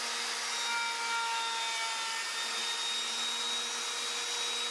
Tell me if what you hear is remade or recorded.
recorded